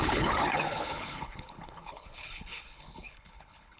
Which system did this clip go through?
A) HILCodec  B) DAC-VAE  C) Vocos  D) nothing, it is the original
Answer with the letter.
A